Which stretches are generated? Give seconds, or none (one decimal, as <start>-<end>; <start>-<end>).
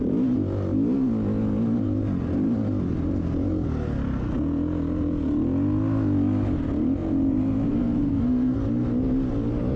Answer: 7.0-8.1